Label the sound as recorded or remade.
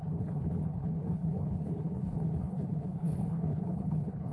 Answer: remade